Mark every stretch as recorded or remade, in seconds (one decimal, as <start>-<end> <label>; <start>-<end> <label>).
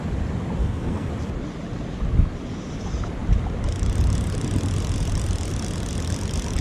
0.0-0.6 recorded; 0.6-1.1 remade; 1.1-6.6 recorded